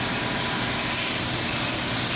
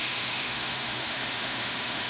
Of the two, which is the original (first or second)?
first